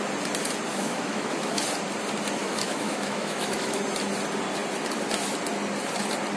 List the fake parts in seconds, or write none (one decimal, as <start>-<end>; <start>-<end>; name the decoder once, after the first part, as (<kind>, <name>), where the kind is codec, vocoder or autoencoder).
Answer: 0.7-1.6 (autoencoder, DAC-VAE); 2.4-3.8